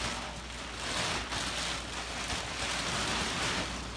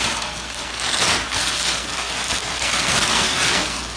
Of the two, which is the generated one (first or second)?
second